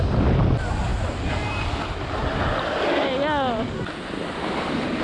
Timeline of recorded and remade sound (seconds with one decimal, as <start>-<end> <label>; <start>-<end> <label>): 0.0-5.0 recorded